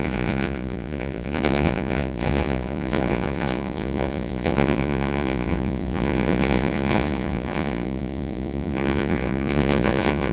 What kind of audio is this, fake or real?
fake